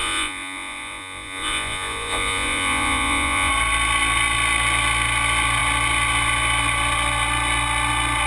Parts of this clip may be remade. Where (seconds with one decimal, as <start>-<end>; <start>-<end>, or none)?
0.0-3.5